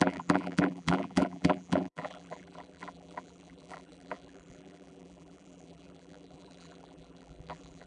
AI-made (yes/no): yes